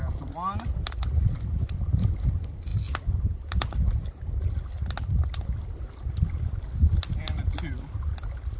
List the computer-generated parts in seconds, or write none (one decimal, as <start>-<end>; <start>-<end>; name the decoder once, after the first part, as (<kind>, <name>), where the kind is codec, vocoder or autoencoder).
none